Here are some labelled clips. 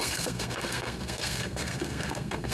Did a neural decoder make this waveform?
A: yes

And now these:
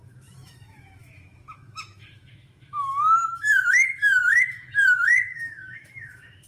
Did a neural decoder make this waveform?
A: yes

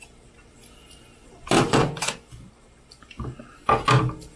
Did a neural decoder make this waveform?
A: no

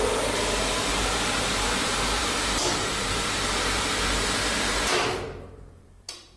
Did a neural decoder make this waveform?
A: yes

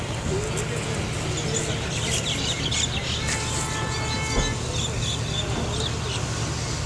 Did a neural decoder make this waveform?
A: no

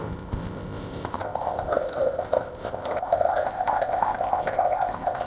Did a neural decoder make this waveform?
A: yes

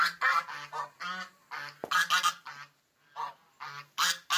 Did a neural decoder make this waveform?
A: no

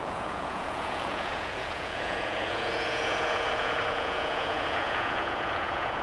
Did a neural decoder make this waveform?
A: yes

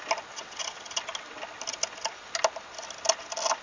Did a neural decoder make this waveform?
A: no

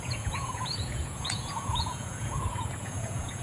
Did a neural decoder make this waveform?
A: yes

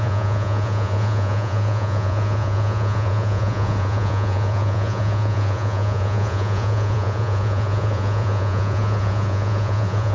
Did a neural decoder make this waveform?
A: yes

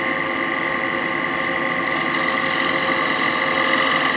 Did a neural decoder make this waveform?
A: no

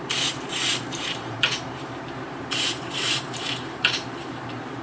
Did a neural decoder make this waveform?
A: yes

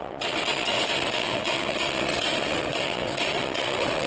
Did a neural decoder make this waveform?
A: yes